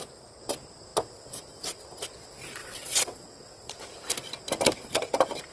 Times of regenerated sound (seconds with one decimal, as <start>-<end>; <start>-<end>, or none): 2.6-3.7